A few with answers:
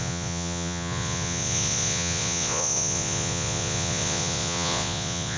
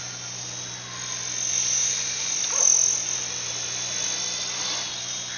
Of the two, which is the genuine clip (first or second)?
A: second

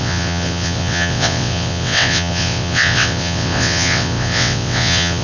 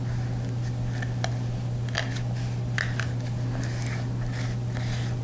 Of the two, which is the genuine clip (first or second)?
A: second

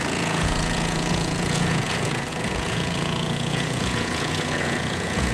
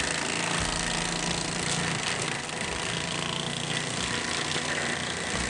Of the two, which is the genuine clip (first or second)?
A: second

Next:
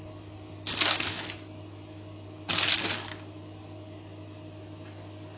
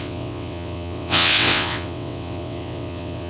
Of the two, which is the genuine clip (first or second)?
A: first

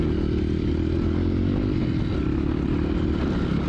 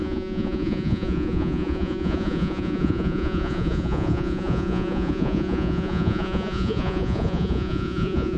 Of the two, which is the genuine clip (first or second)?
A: first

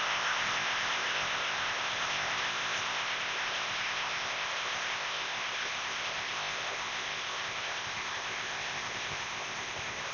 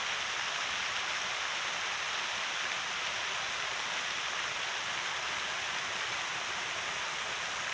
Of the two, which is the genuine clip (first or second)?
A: second